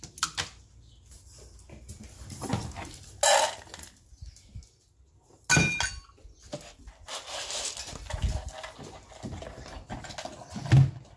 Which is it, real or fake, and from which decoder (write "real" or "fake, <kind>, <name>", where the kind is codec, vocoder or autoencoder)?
real